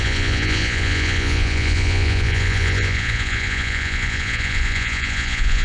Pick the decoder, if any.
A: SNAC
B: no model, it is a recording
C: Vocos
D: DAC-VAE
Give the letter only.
C